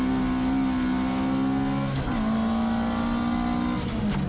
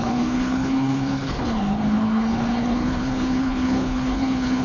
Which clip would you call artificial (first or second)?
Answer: second